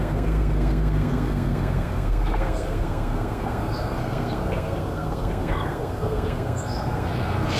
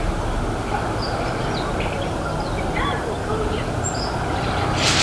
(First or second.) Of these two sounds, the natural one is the second